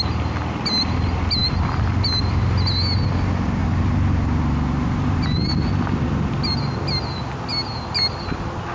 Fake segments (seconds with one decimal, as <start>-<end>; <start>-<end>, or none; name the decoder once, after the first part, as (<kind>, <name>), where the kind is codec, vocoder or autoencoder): 3.6-5.7 (vocoder, BigVGAN v2); 7.5-8.1